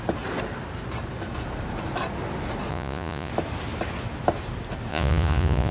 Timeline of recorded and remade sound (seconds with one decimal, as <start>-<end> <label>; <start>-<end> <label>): 0.0-2.7 recorded; 2.7-3.3 remade; 3.3-4.9 recorded; 4.9-5.7 remade